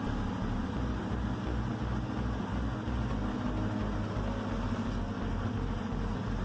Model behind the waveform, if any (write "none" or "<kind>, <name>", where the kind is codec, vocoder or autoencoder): none